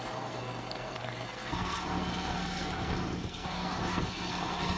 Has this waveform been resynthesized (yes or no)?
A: yes